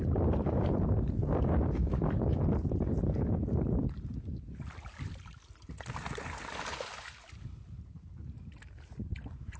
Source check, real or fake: real